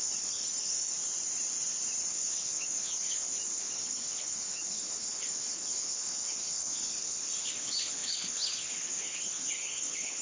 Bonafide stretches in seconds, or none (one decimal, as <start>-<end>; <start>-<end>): 0.9-2.1